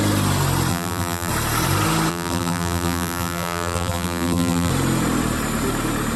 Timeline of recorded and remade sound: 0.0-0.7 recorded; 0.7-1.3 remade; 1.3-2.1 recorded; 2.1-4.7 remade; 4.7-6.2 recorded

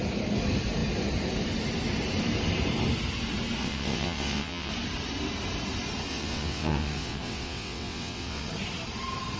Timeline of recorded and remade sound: 0.0-3.6 recorded; 3.6-4.7 remade; 4.7-6.1 recorded; 6.1-8.5 remade; 8.5-9.4 recorded

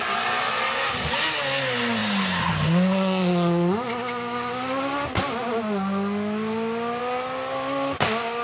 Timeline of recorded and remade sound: 0.0-8.4 recorded